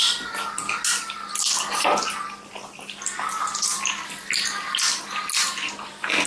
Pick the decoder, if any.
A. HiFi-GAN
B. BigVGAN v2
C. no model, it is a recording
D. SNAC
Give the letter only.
C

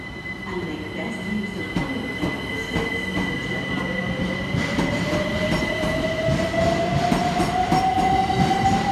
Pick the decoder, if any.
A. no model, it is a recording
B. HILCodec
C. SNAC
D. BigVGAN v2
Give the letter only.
A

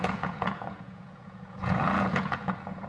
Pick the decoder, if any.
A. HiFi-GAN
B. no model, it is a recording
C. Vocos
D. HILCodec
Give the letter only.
C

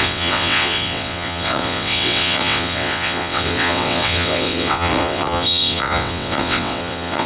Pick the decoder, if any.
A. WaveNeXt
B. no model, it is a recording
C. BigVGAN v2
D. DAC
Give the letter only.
A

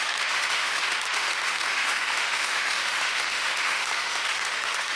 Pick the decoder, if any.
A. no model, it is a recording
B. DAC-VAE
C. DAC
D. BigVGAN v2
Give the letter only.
B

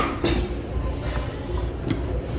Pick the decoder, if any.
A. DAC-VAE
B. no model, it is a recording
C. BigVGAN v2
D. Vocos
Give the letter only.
B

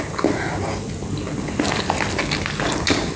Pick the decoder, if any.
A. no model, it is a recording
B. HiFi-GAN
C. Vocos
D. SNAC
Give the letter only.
A